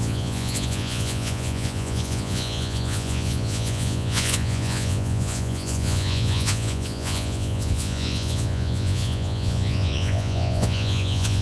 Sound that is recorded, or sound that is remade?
remade